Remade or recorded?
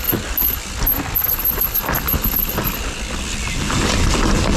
recorded